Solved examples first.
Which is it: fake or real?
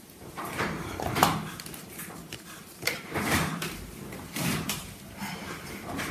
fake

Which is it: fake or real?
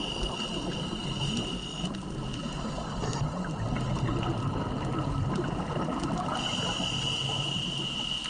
real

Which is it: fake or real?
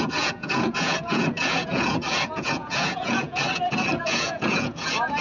fake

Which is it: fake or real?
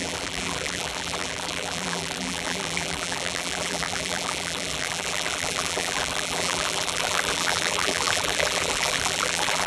fake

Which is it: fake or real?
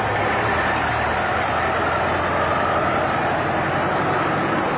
real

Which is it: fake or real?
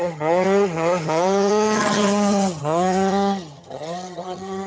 fake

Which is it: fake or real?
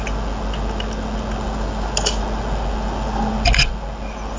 real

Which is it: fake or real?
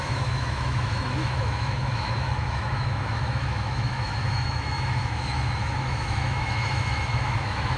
fake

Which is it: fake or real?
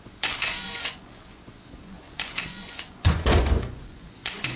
fake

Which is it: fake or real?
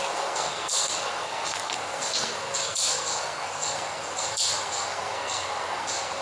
fake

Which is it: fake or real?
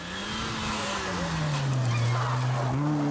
real